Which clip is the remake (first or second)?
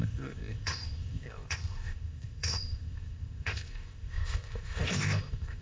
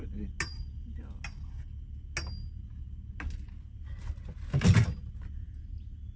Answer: first